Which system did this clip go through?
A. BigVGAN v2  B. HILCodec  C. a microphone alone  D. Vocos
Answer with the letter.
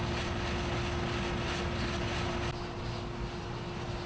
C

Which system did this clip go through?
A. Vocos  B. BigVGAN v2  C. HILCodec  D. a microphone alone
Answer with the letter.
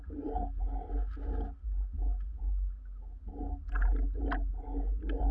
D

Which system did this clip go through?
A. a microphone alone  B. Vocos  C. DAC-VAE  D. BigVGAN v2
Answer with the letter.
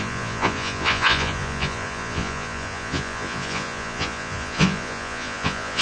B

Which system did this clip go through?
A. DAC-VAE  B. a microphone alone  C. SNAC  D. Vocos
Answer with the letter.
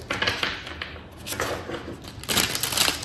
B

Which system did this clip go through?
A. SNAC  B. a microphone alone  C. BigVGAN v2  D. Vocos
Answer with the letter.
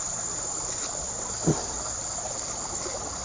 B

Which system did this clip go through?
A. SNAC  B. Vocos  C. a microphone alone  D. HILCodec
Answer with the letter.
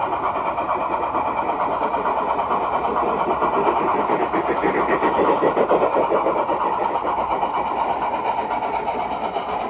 C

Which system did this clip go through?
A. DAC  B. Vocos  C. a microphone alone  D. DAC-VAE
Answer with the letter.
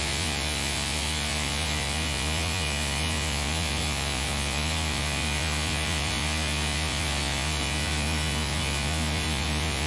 B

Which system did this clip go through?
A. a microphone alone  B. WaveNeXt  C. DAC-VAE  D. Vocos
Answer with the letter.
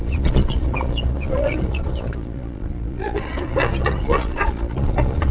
D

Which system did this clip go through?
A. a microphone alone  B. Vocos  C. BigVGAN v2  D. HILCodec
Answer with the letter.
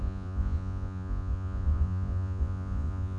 B